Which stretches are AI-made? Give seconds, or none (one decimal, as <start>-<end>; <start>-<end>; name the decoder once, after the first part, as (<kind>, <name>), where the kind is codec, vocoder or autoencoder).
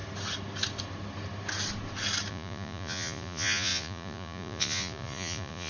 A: 2.3-5.7 (vocoder, Vocos)